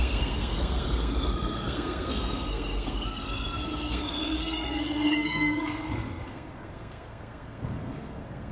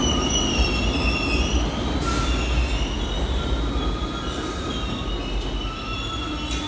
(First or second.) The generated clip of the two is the first